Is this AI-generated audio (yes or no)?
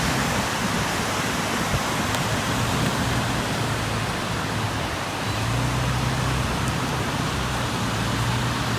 no